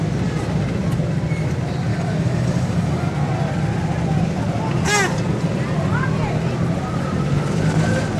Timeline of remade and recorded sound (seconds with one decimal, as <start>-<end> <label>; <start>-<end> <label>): 0.0-1.9 recorded; 1.9-3.1 remade; 3.1-8.2 recorded

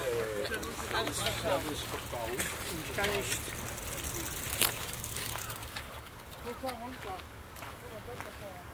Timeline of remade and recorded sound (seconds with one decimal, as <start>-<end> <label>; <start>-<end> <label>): 0.0-0.4 remade; 0.4-4.7 recorded; 4.7-8.7 remade

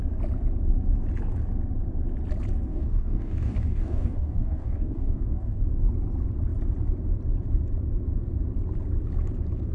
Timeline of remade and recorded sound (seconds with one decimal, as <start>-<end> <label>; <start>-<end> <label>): 0.0-2.7 recorded; 2.7-5.6 remade; 5.6-9.7 recorded

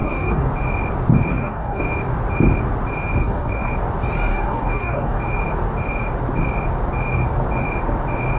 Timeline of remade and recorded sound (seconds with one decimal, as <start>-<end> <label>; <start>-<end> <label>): 0.0-0.5 remade; 0.5-1.3 recorded; 1.3-1.8 remade; 1.8-3.2 recorded; 3.2-3.7 remade; 3.7-4.3 recorded; 4.3-5.2 remade; 5.2-8.4 recorded

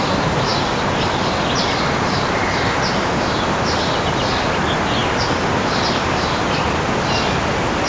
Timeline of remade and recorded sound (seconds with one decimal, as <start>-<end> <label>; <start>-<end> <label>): 0.0-7.9 recorded